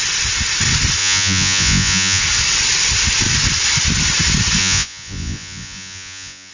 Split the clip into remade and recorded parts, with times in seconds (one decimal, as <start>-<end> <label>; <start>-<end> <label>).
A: 0.0-1.0 recorded; 1.0-2.2 remade; 2.2-4.6 recorded; 4.6-6.5 remade